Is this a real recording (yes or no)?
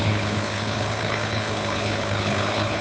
no